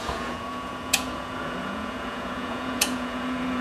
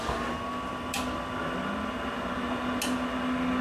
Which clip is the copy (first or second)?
first